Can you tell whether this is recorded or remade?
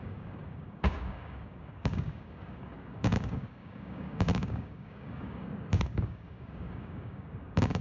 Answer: remade